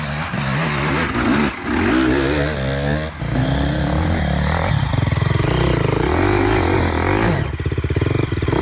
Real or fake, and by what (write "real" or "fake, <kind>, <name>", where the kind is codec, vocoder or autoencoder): real